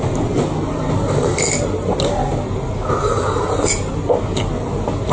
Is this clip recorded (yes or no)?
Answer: yes